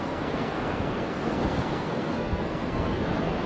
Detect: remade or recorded remade